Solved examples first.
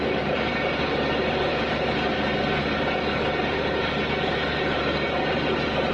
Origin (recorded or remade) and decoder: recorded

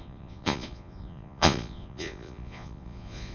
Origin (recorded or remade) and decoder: remade, vocoder, Vocos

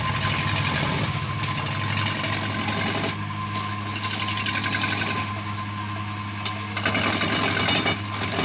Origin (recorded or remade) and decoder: recorded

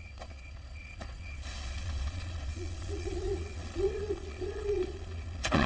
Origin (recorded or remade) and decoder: remade, vocoder, Vocos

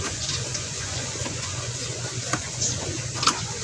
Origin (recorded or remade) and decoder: remade, vocoder, Vocos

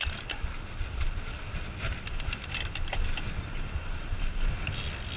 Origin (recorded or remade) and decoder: recorded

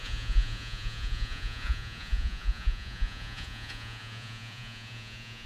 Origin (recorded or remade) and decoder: remade, vocoder, Vocos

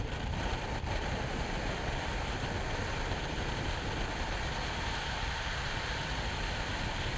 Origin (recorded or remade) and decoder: recorded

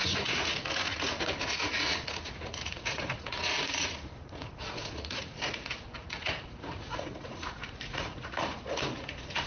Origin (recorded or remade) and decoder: remade, vocoder, Vocos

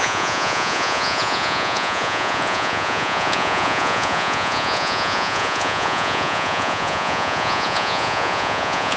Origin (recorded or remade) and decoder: remade, vocoder, Vocos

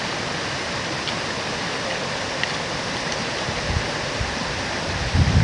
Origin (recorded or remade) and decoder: recorded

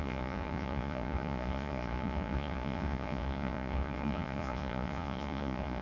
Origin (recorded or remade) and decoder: remade, vocoder, Vocos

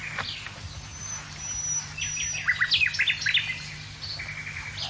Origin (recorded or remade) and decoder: recorded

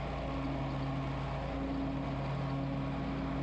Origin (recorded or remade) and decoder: recorded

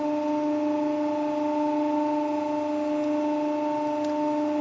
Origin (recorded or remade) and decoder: recorded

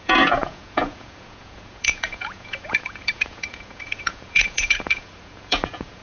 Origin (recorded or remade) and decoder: remade, vocoder, Vocos